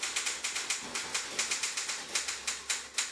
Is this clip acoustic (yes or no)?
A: yes